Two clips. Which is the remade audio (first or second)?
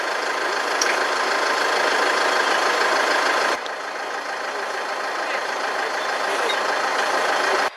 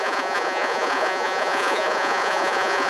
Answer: second